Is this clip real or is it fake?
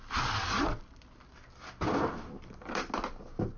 real